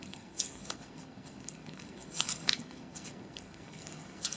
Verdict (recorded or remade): remade